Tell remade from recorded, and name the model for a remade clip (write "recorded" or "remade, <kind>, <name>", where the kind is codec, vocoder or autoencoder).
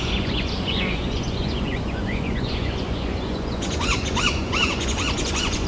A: remade, vocoder, Vocos